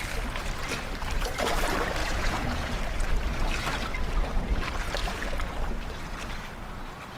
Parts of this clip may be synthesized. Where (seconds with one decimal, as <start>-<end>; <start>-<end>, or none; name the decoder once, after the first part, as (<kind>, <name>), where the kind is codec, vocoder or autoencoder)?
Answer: 2.0-2.8 (vocoder, Vocos)